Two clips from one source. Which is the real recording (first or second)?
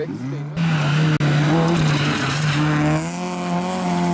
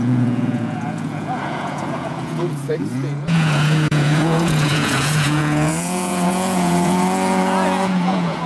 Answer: first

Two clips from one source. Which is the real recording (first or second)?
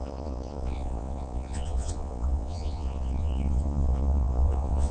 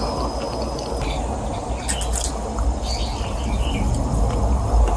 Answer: second